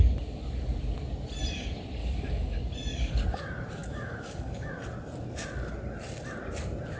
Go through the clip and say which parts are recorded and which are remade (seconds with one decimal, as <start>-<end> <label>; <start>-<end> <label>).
0.0-2.0 recorded; 2.0-2.6 remade; 2.6-3.8 recorded; 3.8-4.7 remade; 4.7-7.0 recorded